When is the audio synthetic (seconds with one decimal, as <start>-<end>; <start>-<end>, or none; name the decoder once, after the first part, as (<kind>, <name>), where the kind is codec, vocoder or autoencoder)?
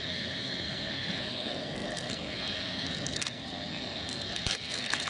0.0-5.1 (codec, SNAC)